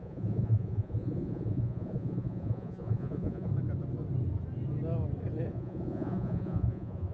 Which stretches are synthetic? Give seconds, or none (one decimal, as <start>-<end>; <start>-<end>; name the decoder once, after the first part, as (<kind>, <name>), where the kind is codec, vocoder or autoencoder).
0.0-3.5 (vocoder, Vocos); 5.5-7.1